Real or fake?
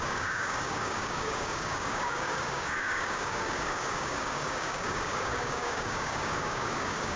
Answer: fake